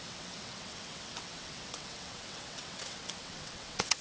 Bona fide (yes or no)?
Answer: no